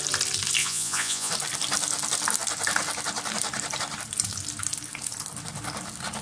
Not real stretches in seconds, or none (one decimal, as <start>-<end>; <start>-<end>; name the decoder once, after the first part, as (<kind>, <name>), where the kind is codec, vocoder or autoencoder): 0.6-1.3 (vocoder, Vocos)